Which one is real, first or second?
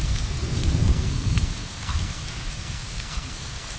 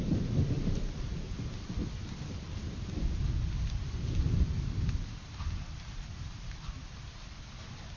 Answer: second